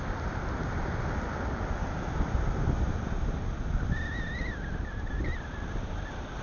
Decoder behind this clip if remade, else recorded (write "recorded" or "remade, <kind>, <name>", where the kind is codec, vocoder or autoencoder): recorded